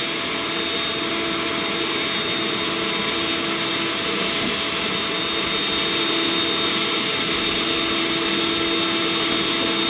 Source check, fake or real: real